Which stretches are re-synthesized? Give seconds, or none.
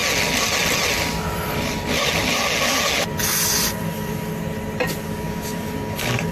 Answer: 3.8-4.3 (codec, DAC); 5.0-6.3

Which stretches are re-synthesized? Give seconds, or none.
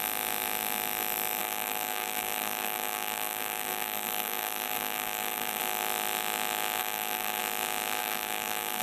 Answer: 1.4-5.6 (codec, DAC); 6.8-7.4; 8.0-8.8